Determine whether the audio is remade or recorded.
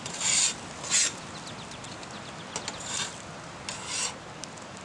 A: recorded